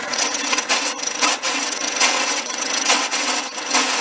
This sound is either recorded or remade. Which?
remade